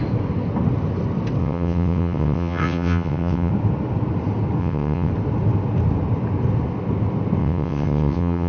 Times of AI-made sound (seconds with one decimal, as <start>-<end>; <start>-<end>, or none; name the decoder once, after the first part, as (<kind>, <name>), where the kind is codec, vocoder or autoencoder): 1.4-3.5 (vocoder, WaveNeXt); 4.6-5.1; 7.4-8.5